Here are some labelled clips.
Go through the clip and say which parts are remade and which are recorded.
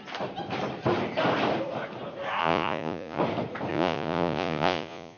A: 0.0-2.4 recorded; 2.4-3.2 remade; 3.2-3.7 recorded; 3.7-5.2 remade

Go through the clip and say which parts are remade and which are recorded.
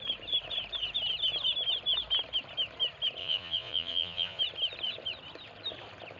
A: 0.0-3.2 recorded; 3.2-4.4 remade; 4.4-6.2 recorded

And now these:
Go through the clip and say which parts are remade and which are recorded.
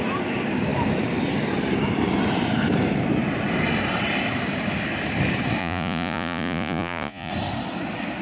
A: 0.0-5.6 recorded; 5.6-7.3 remade; 7.3-8.2 recorded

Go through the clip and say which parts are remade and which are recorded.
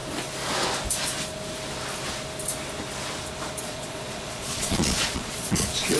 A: 0.0-3.6 recorded; 3.6-6.0 remade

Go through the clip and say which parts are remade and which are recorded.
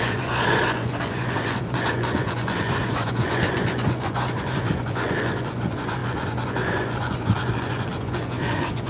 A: 0.0-8.9 remade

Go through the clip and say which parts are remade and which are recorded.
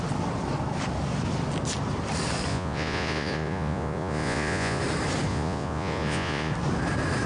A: 0.0-2.5 recorded; 2.5-4.8 remade; 4.8-5.3 recorded; 5.3-6.5 remade; 6.5-7.3 recorded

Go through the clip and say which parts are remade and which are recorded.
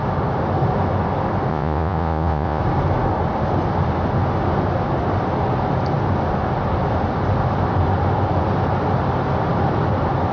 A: 0.0-1.5 recorded; 1.5-2.6 remade; 2.6-10.3 recorded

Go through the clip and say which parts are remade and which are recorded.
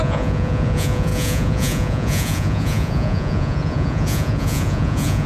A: 0.0-5.3 remade